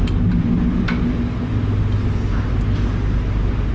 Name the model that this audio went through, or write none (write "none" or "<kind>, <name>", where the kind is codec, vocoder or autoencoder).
none